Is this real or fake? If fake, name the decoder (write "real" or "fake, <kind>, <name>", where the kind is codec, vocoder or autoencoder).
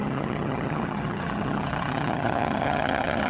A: fake, vocoder, HiFi-GAN